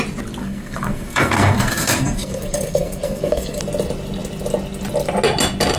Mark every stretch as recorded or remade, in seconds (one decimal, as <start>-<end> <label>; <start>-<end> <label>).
0.0-0.4 recorded; 0.4-3.6 remade; 3.6-5.8 recorded